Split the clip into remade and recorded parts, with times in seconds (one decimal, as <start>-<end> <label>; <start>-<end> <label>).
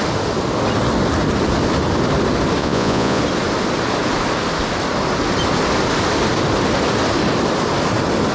0.0-2.6 recorded; 2.6-3.2 remade; 3.2-8.3 recorded